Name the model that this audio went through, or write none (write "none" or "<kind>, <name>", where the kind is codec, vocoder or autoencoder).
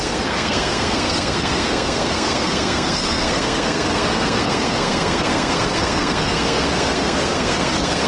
codec, SNAC